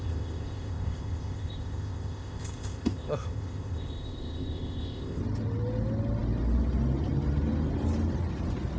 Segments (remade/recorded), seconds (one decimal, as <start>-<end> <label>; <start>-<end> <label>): 0.0-5.2 remade; 5.2-8.8 recorded

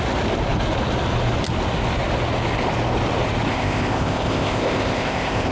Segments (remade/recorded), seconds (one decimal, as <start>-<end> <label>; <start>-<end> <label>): 0.0-3.5 recorded; 3.5-5.5 remade

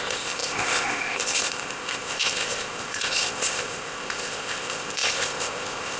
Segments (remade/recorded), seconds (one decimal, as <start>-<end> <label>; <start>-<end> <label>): 0.0-6.0 remade

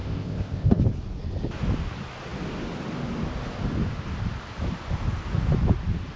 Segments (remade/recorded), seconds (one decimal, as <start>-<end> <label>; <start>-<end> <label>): 0.0-0.8 remade; 0.8-6.2 recorded

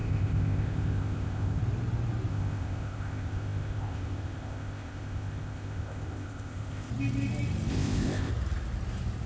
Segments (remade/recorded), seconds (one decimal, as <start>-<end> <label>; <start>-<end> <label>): 0.0-1.6 remade; 1.6-2.3 recorded; 2.3-6.9 remade; 6.9-7.7 recorded; 7.7-8.3 remade; 8.3-9.3 recorded